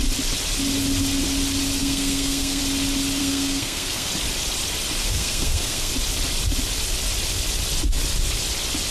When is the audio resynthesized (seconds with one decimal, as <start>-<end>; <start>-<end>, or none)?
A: 1.8-2.6; 3.2-4.1; 5.0-5.9